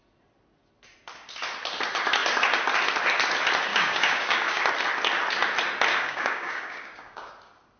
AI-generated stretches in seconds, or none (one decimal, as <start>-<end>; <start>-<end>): 3.7-4.6; 5.9-7.3